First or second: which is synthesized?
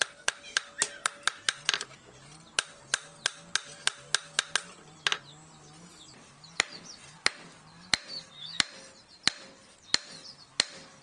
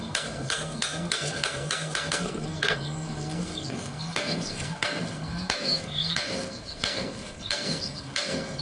second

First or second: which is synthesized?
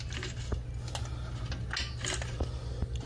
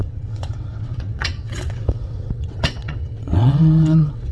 second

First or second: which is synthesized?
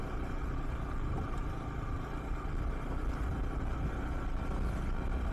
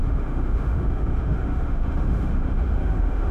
second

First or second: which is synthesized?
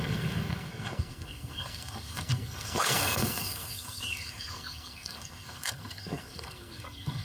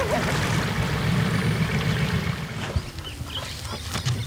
first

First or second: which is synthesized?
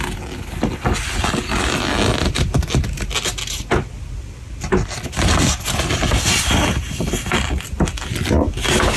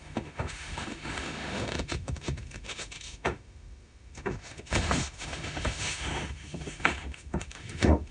second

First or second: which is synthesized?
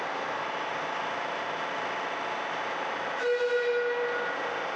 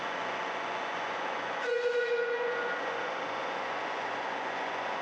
second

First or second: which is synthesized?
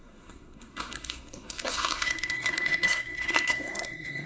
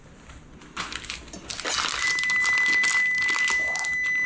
first